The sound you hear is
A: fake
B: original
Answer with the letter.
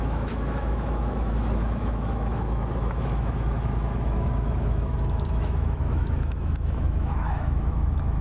A